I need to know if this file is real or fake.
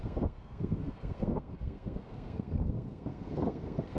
fake